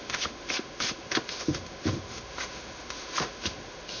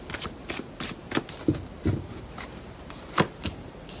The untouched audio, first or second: second